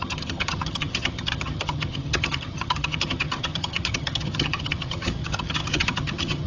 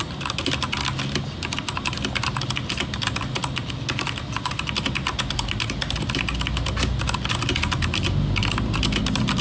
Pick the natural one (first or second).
second